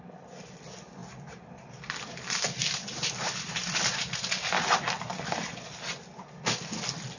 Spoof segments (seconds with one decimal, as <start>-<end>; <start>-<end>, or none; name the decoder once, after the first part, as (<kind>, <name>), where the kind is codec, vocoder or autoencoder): none

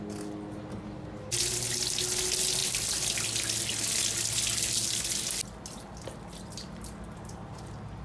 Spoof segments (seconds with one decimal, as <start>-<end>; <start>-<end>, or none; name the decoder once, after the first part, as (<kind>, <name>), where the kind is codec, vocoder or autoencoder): none